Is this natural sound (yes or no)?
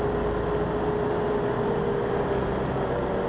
yes